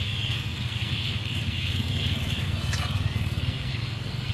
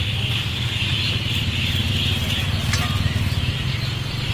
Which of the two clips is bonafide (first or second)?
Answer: second